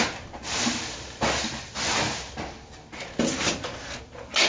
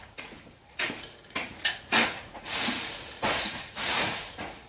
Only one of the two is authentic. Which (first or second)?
first